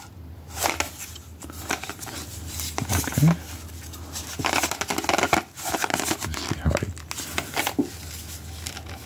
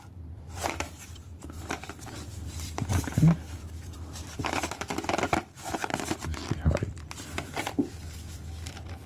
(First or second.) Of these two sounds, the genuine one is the first